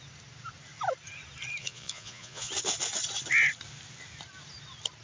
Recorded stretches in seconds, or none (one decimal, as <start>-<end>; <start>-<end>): 0.0-1.6; 2.5-5.0